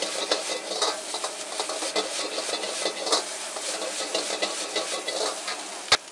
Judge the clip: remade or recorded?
recorded